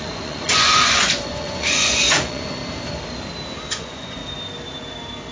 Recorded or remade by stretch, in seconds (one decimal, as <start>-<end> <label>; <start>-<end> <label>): 0.0-2.6 remade; 2.6-3.7 recorded; 3.7-4.2 remade; 4.2-5.3 recorded